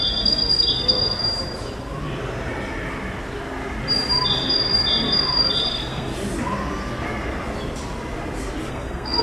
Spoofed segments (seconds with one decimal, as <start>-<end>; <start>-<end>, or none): 0.0-1.2; 5.6-6.1; 8.7-9.2